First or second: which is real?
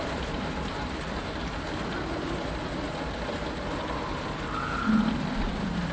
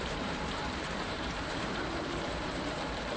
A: first